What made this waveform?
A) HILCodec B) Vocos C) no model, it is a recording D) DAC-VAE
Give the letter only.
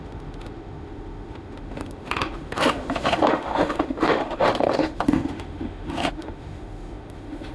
D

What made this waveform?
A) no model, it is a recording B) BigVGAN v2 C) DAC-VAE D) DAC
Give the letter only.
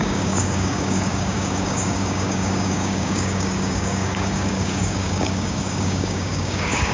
D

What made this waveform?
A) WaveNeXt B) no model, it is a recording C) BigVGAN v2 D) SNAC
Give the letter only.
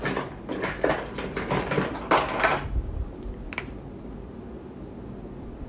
B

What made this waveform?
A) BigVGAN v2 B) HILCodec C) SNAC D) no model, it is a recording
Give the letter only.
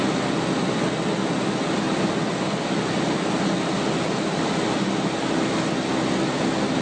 D